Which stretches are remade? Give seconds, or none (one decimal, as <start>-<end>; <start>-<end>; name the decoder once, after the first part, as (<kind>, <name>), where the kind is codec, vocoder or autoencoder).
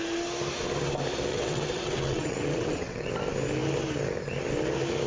1.3-3.1 (vocoder, WaveNeXt)